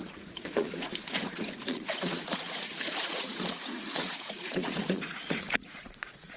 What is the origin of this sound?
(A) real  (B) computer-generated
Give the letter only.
B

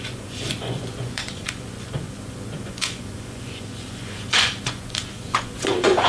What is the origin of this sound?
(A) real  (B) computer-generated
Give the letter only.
B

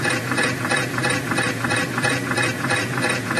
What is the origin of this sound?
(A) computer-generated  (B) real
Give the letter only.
A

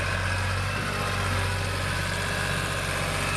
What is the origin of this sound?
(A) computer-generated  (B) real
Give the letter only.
B